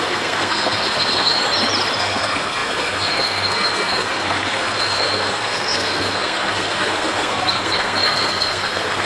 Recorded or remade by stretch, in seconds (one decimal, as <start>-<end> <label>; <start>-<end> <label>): 0.0-1.4 remade; 1.4-2.0 recorded; 2.0-9.1 remade